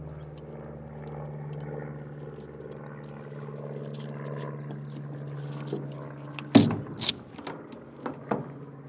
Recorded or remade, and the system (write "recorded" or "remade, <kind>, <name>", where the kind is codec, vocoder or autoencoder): recorded